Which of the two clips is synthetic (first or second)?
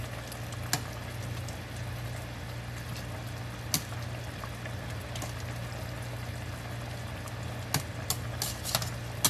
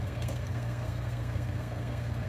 second